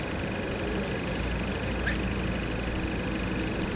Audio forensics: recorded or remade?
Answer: recorded